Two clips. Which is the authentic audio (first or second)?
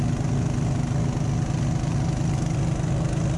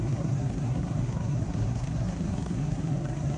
first